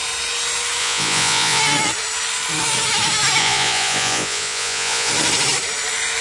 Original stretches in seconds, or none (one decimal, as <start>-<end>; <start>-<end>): 0.0-0.8; 1.6-3.4; 5.1-6.2

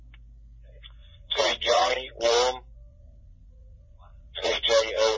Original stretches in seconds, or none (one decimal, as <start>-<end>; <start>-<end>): 0.0-1.0; 1.9-2.9; 4.6-5.2

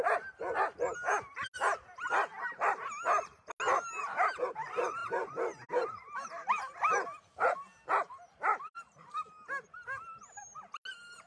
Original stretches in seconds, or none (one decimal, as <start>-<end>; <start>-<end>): 0.0-11.3

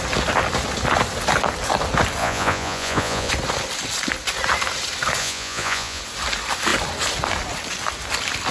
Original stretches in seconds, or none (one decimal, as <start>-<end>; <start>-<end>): 0.0-2.2; 3.3-5.2; 6.0-8.5

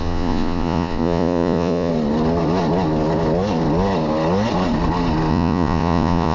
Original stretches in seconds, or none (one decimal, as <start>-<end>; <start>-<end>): 1.9-5.3